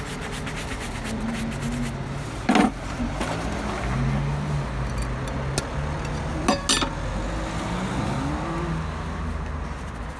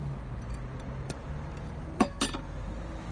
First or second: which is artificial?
second